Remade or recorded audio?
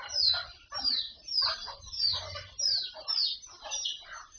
recorded